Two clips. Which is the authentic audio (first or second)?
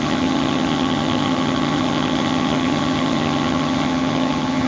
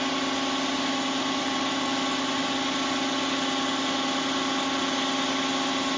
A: second